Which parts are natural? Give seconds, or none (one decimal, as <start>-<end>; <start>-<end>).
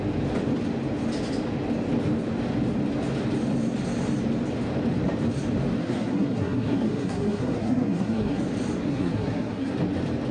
0.0-5.8; 8.4-8.9; 9.7-10.3